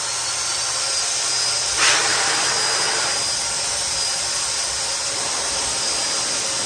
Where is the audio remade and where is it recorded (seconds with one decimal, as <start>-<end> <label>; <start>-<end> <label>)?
0.0-6.7 recorded